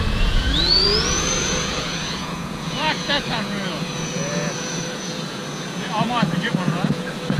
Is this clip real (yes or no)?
no